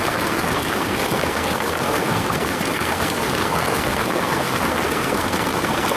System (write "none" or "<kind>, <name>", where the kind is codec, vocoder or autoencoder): codec, SNAC